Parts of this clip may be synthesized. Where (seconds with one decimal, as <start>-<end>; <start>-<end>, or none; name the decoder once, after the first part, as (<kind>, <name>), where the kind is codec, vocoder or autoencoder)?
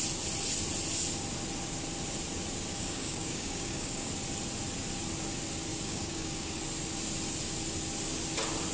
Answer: 2.7-4.1 (codec, DAC); 5.7-6.6